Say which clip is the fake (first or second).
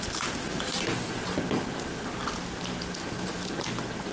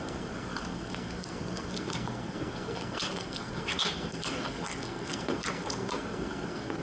second